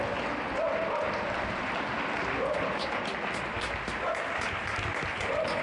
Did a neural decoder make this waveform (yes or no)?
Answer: no